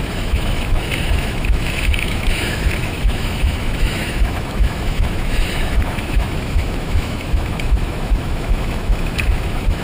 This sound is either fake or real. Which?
fake